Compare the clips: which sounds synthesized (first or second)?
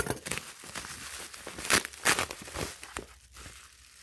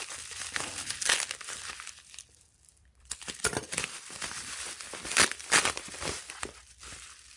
second